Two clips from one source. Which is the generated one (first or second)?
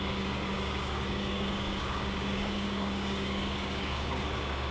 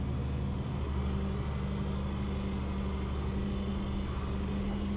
first